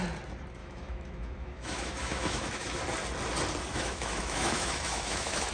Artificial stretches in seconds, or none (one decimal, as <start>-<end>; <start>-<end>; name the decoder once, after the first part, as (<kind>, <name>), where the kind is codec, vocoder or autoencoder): 0.6-2.8 (autoencoder, DAC-VAE); 3.7-5.5